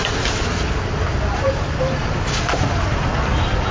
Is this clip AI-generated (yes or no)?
no